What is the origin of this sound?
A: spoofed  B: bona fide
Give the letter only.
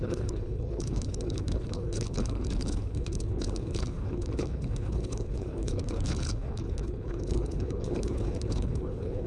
A